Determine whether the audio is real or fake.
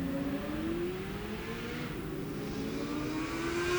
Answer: real